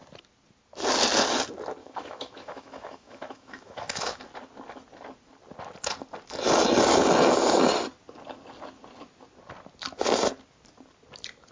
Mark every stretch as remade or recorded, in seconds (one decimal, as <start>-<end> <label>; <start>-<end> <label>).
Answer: 0.0-1.8 recorded; 1.8-4.2 remade; 4.2-11.5 recorded